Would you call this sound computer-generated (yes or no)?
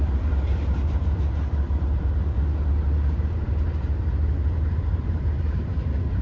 yes